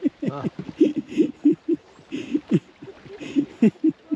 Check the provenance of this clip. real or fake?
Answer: real